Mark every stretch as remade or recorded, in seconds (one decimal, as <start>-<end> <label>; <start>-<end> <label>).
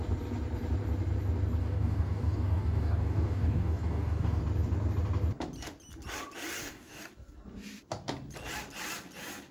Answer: 0.0-1.6 recorded; 1.6-4.4 remade; 4.4-6.6 recorded; 6.6-7.1 remade; 7.1-9.5 recorded